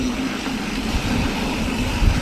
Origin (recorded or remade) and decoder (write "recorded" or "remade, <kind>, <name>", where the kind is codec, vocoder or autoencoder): recorded